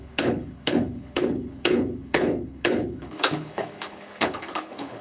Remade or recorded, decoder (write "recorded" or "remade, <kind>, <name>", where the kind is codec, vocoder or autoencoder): remade, codec, HILCodec